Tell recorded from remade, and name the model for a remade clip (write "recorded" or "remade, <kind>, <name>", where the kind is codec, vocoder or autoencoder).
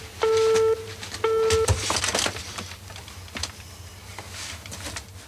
recorded